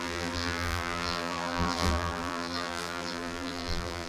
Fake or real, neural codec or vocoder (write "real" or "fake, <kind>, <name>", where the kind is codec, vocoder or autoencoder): fake, vocoder, BigVGAN v2